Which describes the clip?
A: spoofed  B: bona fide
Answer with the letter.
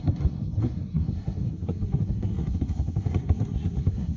A